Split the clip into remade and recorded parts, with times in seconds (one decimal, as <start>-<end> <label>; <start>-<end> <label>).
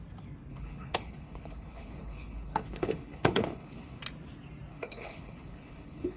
0.0-0.5 recorded; 0.5-4.0 remade; 4.0-4.7 recorded; 4.7-6.2 remade